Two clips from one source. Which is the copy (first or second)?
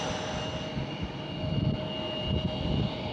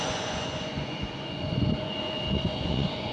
second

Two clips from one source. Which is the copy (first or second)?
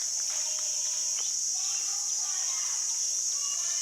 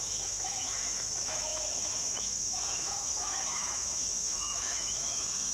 second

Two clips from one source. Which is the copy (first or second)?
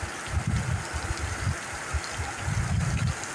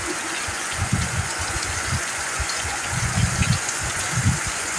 second